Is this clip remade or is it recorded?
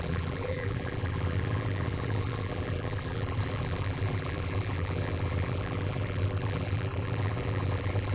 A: remade